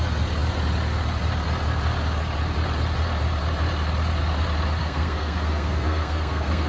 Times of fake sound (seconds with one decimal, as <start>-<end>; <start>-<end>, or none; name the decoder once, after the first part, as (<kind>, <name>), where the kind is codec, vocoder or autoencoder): 4.8-6.7 (codec, SNAC)